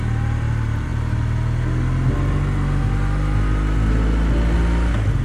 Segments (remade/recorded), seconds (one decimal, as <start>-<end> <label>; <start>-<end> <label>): 0.0-5.2 recorded